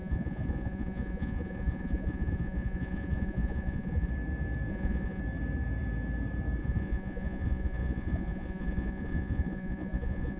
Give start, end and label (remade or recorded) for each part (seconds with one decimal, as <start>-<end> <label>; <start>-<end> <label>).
0.0-4.1 remade; 4.1-4.7 recorded; 4.7-5.2 remade; 5.2-6.6 recorded; 6.6-10.4 remade